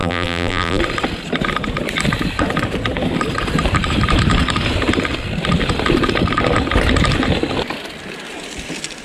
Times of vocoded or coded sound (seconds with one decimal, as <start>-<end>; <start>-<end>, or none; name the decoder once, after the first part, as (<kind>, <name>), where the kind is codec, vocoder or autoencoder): 0.0-0.8 (vocoder, BigVGAN v2)